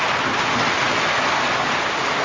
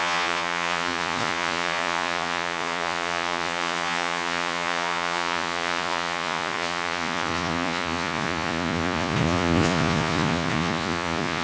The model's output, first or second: second